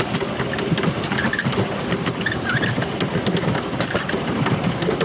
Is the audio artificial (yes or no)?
no